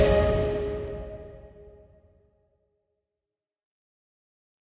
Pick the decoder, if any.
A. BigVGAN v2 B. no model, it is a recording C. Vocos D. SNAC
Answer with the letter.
A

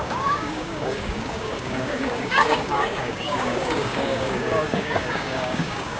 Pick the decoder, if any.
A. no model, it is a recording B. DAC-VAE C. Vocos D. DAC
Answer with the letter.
D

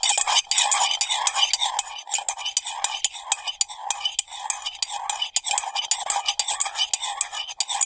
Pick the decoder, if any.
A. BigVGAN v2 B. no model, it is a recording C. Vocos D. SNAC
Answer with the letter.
B